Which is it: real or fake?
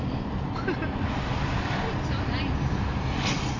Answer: real